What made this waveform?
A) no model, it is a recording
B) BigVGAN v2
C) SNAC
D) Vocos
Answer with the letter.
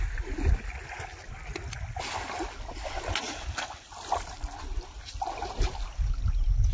A